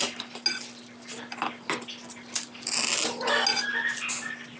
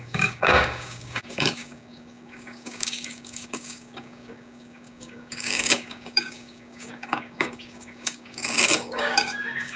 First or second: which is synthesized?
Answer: second